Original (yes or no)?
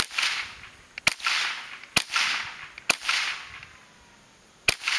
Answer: yes